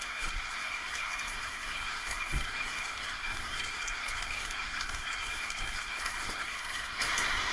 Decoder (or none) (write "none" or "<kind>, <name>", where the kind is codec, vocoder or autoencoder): codec, SNAC